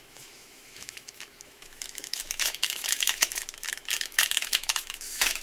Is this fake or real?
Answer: fake